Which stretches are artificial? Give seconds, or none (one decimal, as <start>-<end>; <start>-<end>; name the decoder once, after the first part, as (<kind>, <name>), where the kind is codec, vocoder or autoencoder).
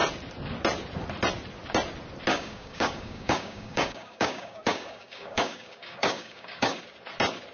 2.3-6.8 (codec, DAC)